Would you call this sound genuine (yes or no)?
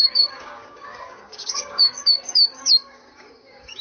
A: no